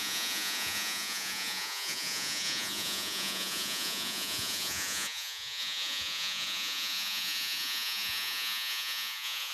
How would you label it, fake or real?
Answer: fake